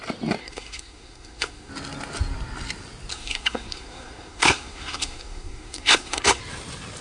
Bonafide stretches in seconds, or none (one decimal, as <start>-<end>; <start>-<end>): 0.0-0.4; 1.7-3.1; 6.4-7.0